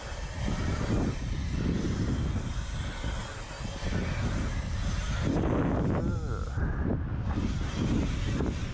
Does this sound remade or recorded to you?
recorded